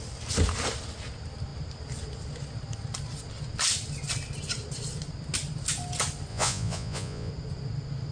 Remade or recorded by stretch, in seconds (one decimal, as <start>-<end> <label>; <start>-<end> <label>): 0.0-6.3 recorded; 6.3-7.3 remade; 7.3-8.1 recorded

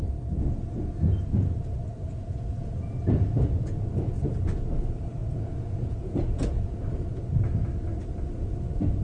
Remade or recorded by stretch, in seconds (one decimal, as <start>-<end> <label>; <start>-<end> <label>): 0.0-2.1 recorded; 2.1-3.9 remade; 3.9-5.2 recorded; 5.2-7.2 remade; 7.2-9.0 recorded

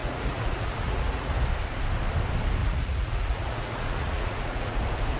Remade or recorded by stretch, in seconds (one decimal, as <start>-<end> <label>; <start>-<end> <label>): 0.0-1.3 remade; 1.3-2.6 recorded; 2.6-4.8 remade; 4.8-5.2 recorded

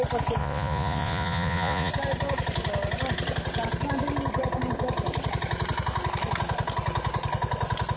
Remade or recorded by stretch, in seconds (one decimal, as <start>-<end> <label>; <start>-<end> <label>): 0.0-0.4 recorded; 0.4-1.9 remade; 1.9-8.0 recorded

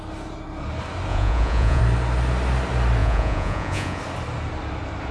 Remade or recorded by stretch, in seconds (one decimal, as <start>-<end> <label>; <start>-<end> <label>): 0.0-1.1 recorded; 1.1-1.8 remade; 1.8-3.0 recorded; 3.0-4.0 remade; 4.0-5.1 recorded

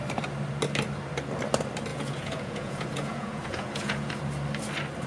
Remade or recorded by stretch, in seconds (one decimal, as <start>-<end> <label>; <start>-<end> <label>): 0.0-1.9 recorded; 1.9-4.2 remade; 4.2-5.1 recorded